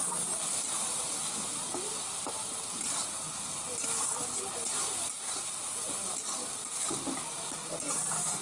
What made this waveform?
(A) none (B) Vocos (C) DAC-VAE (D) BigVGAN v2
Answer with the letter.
A